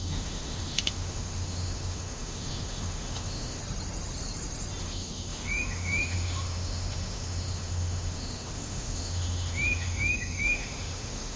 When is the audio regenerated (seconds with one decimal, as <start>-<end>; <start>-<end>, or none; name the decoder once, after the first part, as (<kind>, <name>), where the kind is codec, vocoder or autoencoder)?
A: 0.0-3.6 (autoencoder, DAC-VAE); 4.8-11.4

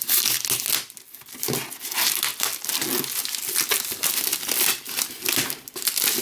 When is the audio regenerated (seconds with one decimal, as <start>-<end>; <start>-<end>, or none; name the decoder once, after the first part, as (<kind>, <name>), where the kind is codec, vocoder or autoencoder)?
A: none

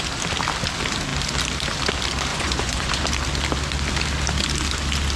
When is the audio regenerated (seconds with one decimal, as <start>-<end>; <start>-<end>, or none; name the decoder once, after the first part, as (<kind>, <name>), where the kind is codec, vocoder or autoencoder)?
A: 2.3-3.0 (vocoder, Vocos)

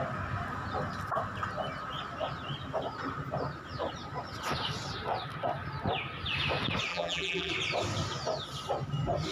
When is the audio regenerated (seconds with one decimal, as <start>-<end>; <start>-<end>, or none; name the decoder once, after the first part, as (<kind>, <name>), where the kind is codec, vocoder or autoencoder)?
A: 6.9-7.5 (vocoder, BigVGAN v2)